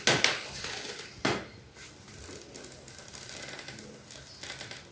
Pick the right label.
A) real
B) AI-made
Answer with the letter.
A